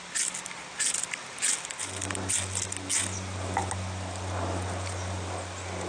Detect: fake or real real